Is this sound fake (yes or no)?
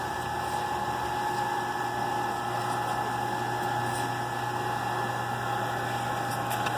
no